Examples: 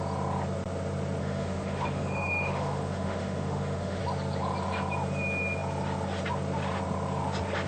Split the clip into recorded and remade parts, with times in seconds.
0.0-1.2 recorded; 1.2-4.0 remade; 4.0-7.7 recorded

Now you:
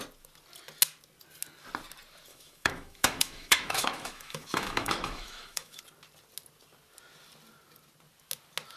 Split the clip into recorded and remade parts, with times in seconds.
0.0-2.3 recorded; 2.3-5.8 remade; 5.8-8.8 recorded